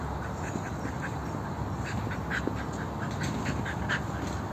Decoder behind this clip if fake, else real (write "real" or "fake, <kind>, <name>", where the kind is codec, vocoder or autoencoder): real